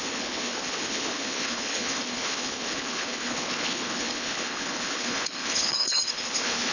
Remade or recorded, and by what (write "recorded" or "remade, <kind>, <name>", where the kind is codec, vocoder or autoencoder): remade, codec, HILCodec